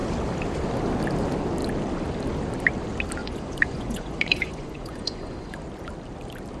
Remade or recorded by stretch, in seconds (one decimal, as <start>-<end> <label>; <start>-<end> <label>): 0.0-3.2 recorded; 3.2-5.6 remade; 5.6-6.6 recorded